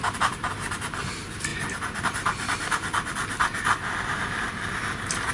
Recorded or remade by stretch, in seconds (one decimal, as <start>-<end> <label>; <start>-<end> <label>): 0.0-5.3 recorded